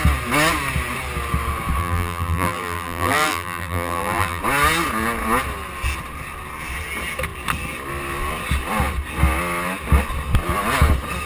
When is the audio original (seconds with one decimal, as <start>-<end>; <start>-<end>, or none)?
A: 0.0-1.8; 4.4-11.3